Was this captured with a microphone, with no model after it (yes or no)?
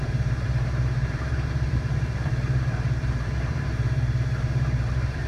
no